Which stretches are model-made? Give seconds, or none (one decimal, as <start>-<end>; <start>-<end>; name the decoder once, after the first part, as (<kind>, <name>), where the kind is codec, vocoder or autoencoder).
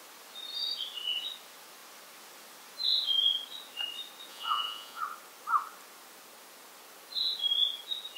4.3-5.0 (vocoder, Vocos)